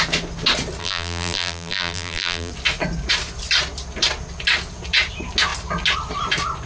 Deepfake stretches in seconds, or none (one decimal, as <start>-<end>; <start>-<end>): 0.8-2.5